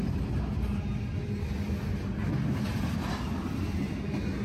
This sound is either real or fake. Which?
real